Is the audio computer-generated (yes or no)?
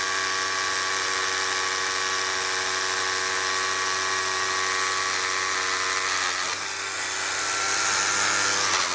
no